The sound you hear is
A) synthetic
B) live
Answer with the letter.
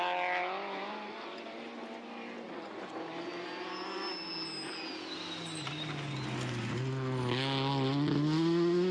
B